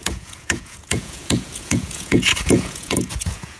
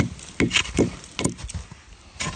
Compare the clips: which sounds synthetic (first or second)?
first